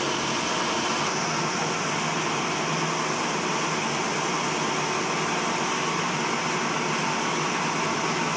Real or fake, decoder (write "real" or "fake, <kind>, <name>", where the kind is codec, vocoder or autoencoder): real